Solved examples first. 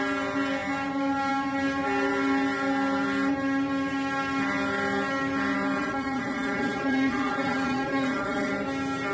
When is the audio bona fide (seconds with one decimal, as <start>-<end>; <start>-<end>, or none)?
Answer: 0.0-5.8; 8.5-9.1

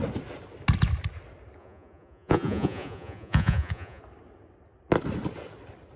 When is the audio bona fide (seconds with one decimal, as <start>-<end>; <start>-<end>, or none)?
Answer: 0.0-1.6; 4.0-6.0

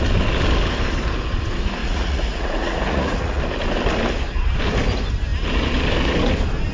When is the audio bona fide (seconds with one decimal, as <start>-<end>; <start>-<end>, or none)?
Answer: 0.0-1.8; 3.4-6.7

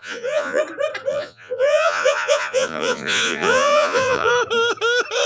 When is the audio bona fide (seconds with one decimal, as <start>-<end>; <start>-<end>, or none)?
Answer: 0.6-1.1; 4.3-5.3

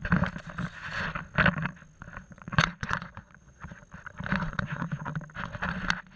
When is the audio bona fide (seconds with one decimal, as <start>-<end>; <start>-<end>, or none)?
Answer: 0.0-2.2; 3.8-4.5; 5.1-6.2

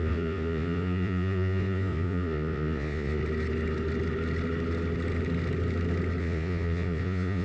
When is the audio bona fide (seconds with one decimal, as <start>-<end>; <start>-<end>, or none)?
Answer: 3.2-6.2

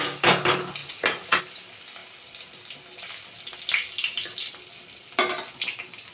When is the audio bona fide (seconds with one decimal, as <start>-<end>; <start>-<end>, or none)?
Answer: 0.0-0.8; 1.4-6.1